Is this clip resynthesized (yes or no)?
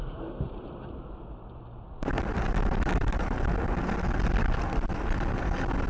no